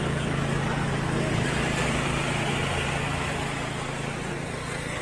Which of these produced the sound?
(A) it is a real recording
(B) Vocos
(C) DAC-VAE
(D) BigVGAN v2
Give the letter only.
A